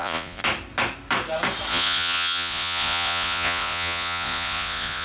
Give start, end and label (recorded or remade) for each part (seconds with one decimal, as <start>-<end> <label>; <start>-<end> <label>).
0.0-0.4 remade; 0.4-1.7 recorded; 1.7-5.0 remade